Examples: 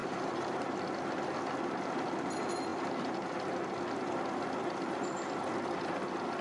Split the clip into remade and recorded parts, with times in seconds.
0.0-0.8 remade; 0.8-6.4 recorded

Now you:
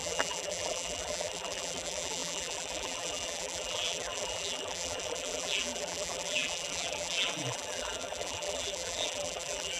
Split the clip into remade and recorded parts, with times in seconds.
0.0-9.8 remade

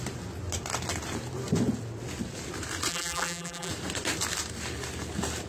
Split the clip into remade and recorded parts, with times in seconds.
0.0-2.9 recorded; 2.9-3.7 remade; 3.7-5.5 recorded